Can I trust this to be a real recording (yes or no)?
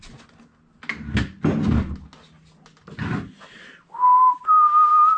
yes